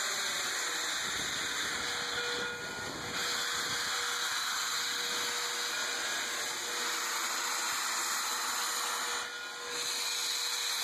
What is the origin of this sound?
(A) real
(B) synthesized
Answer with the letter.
A